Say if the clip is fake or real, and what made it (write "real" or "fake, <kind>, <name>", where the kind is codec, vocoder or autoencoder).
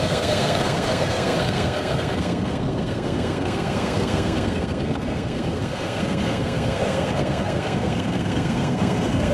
fake, codec, SNAC